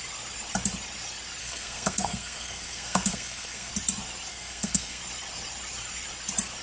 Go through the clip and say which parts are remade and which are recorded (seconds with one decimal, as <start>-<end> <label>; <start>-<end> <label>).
0.0-1.4 recorded; 1.4-3.7 remade; 3.7-4.3 recorded; 4.3-5.0 remade; 5.0-6.6 recorded